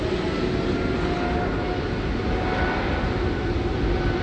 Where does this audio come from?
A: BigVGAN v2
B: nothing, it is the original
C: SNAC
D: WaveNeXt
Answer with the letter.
B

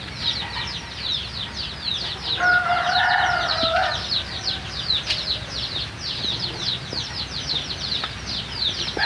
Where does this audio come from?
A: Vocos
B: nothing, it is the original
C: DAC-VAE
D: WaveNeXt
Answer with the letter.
B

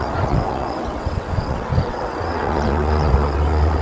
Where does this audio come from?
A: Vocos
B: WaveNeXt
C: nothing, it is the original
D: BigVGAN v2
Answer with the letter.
B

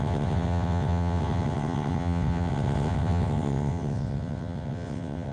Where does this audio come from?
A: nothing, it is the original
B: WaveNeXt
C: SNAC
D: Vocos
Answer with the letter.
B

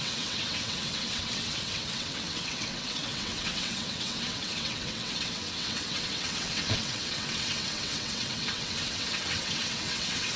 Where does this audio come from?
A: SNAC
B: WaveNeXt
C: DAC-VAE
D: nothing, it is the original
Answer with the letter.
B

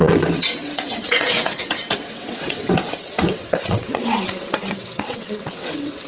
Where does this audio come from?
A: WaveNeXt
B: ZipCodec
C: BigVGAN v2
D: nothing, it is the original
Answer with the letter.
A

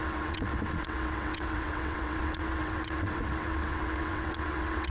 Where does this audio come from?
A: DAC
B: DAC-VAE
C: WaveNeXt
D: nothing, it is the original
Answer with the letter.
C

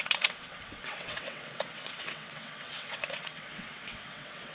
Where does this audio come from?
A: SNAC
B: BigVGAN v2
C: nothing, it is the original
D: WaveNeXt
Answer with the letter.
D